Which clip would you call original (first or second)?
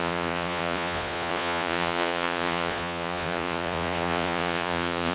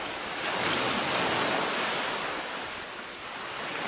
second